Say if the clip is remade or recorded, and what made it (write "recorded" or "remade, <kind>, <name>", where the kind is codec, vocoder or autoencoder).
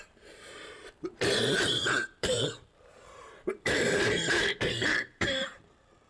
remade, vocoder, BigVGAN v2